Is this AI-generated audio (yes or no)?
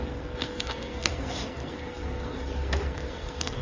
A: yes